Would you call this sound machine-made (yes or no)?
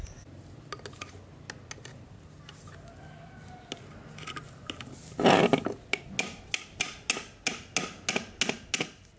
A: no